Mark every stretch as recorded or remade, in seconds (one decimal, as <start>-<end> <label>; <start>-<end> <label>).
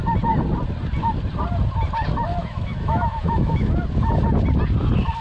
0.0-2.3 recorded; 2.3-3.7 remade; 3.7-5.2 recorded